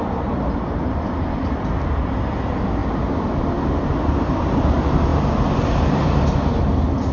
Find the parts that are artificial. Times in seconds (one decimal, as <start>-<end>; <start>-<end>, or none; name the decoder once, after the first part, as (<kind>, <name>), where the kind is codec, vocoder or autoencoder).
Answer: none